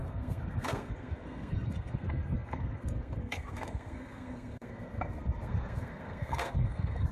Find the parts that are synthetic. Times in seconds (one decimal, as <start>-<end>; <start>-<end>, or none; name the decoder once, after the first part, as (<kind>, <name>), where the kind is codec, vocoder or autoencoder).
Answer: 0.0-7.1 (codec, SNAC)